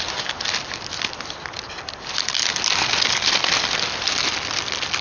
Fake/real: real